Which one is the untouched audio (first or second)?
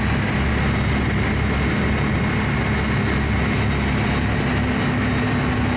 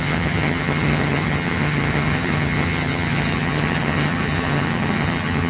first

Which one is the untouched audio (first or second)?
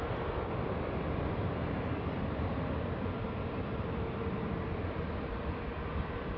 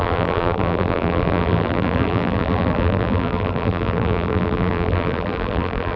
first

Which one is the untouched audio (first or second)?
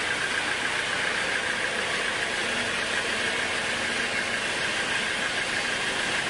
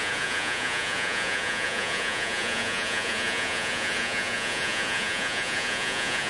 first